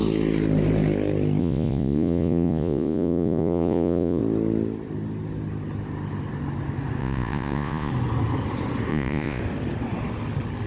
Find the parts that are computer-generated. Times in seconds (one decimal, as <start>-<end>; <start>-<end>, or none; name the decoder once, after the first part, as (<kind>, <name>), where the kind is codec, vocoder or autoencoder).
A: 1.4-4.2 (vocoder, Vocos); 7.0-7.9; 8.9-9.4